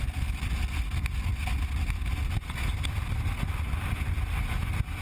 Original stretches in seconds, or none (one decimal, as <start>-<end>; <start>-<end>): 0.0-5.0